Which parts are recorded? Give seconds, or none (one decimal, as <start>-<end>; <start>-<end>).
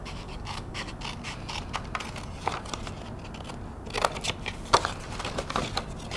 0.9-6.2